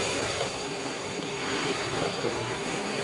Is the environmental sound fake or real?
fake